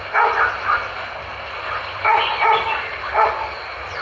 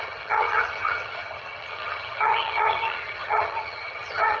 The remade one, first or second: second